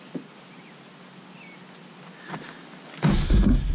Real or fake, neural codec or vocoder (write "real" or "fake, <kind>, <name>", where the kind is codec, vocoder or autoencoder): real